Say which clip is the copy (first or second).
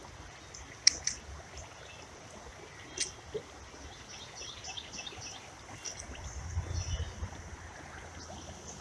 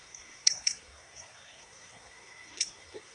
second